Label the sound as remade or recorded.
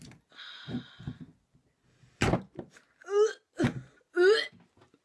recorded